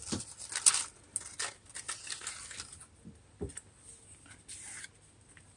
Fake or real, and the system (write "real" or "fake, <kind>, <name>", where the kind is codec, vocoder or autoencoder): real